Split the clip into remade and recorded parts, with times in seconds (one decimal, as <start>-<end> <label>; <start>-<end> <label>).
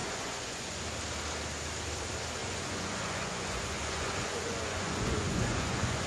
0.0-0.8 remade; 0.8-2.4 recorded; 2.4-6.1 remade